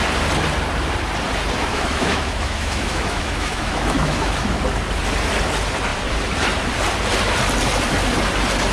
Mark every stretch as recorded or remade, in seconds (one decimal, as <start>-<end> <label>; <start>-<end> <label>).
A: 0.0-1.7 recorded; 1.7-4.6 remade; 4.6-8.7 recorded